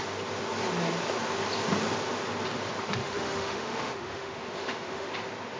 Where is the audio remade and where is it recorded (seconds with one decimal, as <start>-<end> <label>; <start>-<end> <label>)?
0.0-3.0 recorded; 3.0-5.1 remade; 5.1-5.6 recorded